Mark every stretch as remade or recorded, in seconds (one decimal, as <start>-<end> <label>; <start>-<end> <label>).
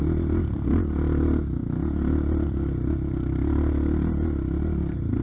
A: 0.0-5.2 recorded